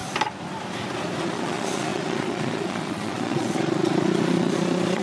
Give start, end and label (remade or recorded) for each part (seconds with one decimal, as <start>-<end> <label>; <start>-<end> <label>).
0.0-1.2 recorded; 1.2-5.0 remade